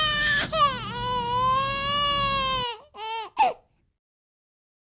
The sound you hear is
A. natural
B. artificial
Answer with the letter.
A